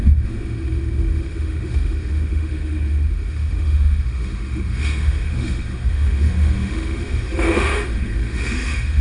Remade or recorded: remade